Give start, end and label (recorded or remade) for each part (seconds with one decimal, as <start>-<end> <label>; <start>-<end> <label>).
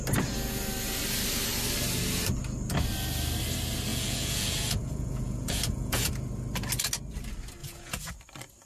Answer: 0.0-3.9 recorded; 3.9-6.1 remade; 6.1-7.6 recorded; 7.6-8.1 remade; 8.1-8.7 recorded